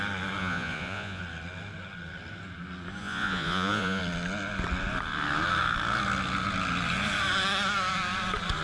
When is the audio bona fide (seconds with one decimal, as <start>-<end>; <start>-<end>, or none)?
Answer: 0.0-0.4; 1.2-3.0; 4.0-8.6